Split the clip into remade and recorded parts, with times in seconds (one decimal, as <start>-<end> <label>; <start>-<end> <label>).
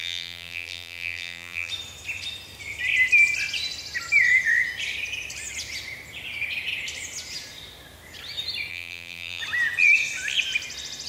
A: 0.0-1.7 remade; 1.7-8.7 recorded; 8.7-9.4 remade; 9.4-11.1 recorded